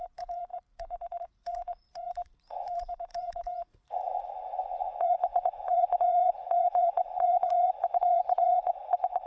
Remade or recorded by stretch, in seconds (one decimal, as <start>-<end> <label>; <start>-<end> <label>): 0.0-9.3 remade

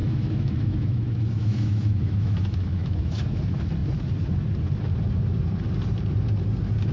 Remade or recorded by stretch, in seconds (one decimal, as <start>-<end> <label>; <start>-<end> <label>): 0.0-3.4 remade; 3.4-6.9 recorded

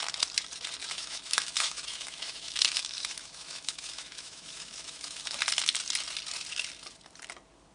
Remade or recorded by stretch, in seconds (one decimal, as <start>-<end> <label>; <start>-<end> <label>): 0.0-0.8 recorded; 0.8-5.4 remade; 5.4-7.7 recorded

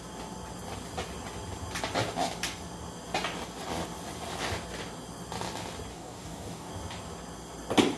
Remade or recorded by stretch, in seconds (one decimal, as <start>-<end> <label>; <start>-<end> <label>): 0.0-5.9 recorded; 5.9-6.7 remade; 6.7-8.0 recorded